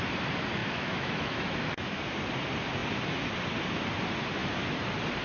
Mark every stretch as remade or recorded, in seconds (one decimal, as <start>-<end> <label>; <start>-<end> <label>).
0.0-0.6 recorded; 0.6-2.0 remade; 2.0-5.2 recorded